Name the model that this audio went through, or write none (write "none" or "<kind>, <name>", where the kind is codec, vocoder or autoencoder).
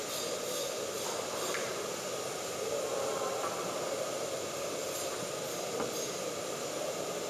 none